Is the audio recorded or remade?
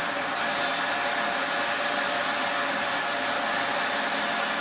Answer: recorded